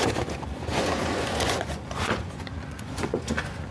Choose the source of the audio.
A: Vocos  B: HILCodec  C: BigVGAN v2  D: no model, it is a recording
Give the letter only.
A